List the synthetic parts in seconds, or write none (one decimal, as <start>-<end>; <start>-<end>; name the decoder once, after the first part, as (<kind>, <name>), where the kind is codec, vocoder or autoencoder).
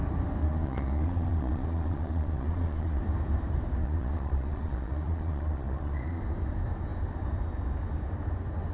0.4-3.0 (vocoder, Vocos); 3.8-6.2